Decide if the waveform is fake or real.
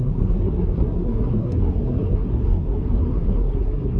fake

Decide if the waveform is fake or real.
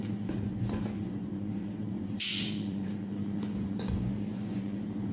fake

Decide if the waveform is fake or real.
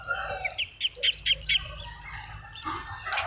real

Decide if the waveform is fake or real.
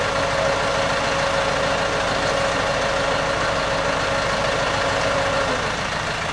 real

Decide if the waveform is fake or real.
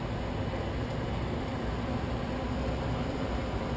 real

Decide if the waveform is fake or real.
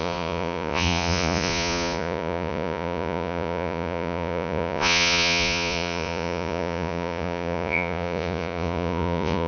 fake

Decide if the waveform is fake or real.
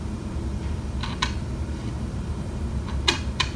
fake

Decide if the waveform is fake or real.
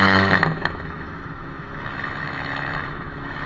fake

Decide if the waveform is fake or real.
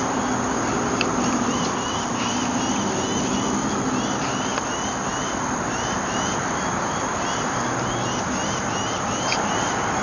real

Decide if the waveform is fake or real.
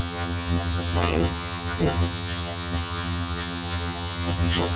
fake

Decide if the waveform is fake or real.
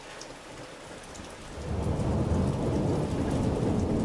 real